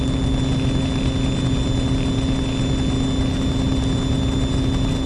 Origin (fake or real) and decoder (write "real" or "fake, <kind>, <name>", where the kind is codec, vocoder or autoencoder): real